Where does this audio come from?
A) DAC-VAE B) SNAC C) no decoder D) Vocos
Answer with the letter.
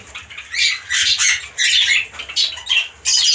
C